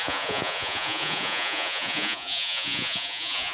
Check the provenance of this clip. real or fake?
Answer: fake